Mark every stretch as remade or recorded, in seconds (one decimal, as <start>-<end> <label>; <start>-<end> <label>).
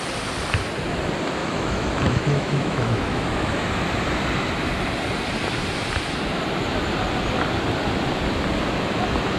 0.0-1.4 recorded; 1.4-3.5 remade; 3.5-9.4 recorded